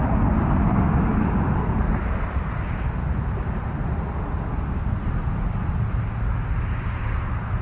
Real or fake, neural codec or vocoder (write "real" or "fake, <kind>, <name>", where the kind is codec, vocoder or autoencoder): real